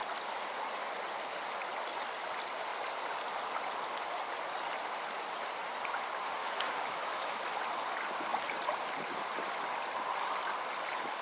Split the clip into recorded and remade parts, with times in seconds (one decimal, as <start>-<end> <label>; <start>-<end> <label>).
0.0-6.4 recorded; 6.4-7.4 remade; 7.4-11.2 recorded